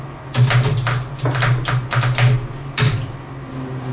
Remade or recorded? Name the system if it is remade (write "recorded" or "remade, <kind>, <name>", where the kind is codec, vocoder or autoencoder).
recorded